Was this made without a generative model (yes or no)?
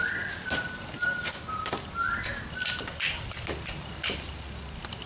yes